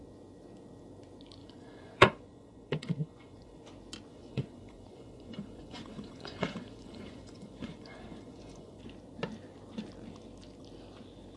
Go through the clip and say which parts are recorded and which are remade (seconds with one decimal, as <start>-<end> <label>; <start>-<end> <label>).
0.0-1.4 recorded; 1.4-3.6 remade; 3.6-4.1 recorded; 4.1-8.8 remade; 8.8-11.4 recorded